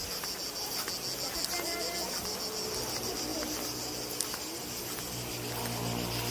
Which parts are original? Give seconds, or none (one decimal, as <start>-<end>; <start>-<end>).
0.0-6.3